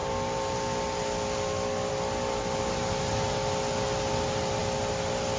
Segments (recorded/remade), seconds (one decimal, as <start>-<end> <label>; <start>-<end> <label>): 0.0-5.4 recorded